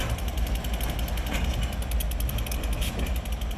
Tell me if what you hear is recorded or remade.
recorded